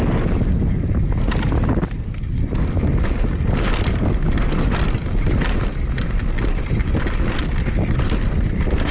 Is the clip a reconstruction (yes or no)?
no